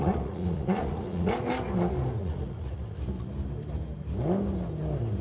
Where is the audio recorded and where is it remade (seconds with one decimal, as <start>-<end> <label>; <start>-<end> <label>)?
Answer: 0.0-1.3 remade; 1.3-2.2 recorded; 2.2-2.8 remade; 2.8-5.2 recorded